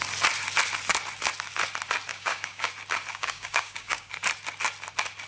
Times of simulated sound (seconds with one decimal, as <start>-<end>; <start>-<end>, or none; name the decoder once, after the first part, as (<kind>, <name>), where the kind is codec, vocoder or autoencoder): 2.1-2.7 (codec, DAC); 3.1-4.1